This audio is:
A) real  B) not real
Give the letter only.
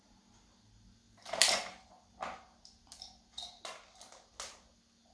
A